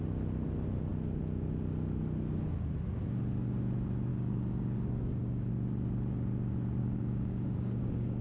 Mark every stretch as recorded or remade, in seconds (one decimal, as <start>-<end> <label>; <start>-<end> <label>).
0.0-4.1 recorded; 4.1-5.5 remade; 5.5-6.8 recorded; 6.8-8.2 remade